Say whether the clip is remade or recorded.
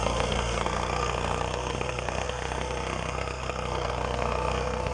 remade